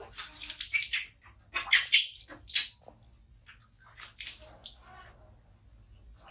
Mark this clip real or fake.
real